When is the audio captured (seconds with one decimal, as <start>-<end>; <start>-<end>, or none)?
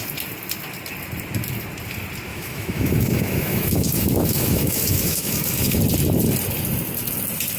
0.0-2.3; 5.8-7.6